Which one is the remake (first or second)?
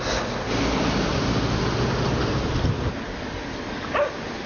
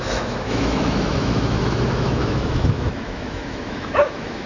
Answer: second